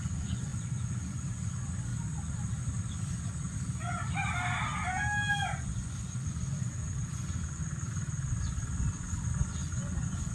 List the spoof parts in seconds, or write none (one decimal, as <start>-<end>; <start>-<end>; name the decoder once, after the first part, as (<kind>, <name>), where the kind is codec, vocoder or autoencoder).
0.0-1.9 (vocoder, Vocos); 5.3-7.6; 8.3-10.3